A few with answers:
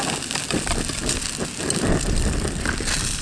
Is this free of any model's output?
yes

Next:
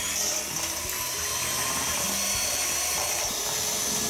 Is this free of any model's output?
yes